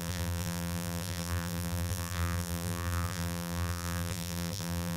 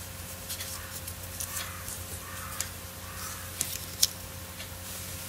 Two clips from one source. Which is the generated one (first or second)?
first